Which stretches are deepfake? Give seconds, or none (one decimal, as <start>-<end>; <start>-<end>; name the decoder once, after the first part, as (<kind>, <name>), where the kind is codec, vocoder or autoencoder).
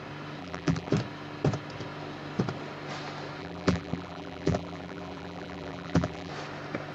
0.4-0.9 (vocoder, BigVGAN v2); 3.4-6.3